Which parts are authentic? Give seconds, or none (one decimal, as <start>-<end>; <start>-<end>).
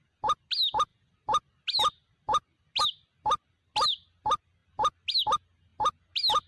0.0-6.5